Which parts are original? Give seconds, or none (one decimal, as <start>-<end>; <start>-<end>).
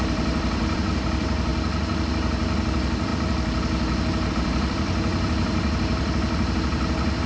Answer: 1.5-2.1; 3.1-4.3